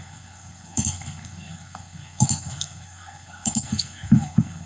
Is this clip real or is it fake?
fake